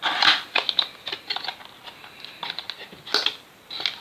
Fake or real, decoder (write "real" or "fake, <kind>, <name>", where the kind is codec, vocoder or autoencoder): real